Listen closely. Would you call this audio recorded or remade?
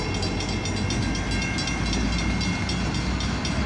recorded